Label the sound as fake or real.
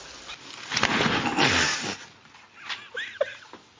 real